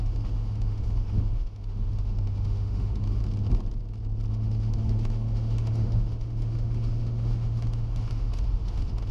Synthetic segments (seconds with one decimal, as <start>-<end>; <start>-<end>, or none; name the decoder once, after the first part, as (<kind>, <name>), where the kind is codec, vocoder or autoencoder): 0.0-3.2 (autoencoder, DAC-VAE); 4.3-9.1